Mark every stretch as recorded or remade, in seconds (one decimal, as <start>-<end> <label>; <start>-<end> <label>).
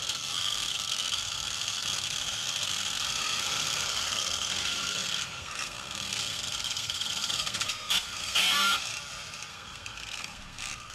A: 0.0-8.9 remade; 8.9-9.5 recorded; 9.5-10.9 remade